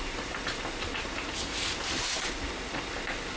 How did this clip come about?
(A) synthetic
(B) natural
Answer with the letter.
B